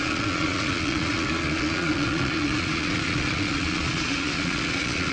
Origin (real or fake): fake